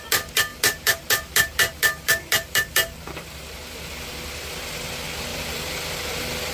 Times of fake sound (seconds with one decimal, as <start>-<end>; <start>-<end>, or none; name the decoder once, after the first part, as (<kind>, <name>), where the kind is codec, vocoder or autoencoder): 0.5-4.1 (vocoder, BigVGAN v2); 5.3-5.9